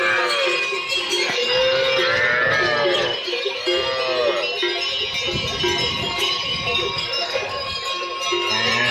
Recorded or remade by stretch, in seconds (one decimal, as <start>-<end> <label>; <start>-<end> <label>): 0.0-3.6 remade; 3.6-5.9 recorded; 5.9-8.1 remade; 8.1-8.9 recorded